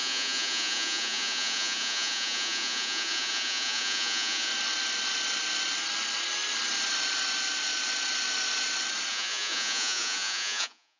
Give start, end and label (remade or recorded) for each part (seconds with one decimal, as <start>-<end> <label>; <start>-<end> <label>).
0.0-4.5 remade; 4.5-9.1 recorded; 9.1-11.0 remade

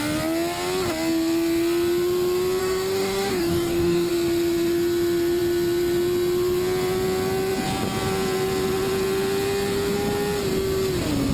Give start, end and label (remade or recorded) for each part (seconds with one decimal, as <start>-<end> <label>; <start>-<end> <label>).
0.0-2.6 recorded; 2.6-4.1 remade; 4.1-11.3 recorded

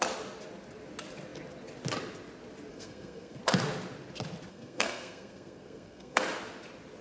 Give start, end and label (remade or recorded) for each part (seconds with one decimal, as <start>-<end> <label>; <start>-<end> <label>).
0.0-2.7 recorded; 2.7-3.4 remade; 3.4-4.5 recorded; 4.5-6.2 remade; 6.2-7.0 recorded

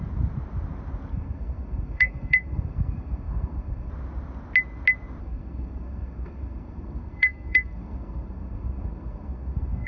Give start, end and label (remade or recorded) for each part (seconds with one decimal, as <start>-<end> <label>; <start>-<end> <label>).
0.0-1.1 recorded; 1.1-3.9 remade; 3.9-5.2 recorded; 5.2-9.9 remade

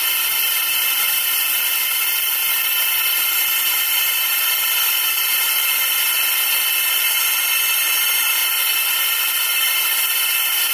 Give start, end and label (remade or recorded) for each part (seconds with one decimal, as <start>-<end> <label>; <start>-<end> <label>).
0.0-10.7 recorded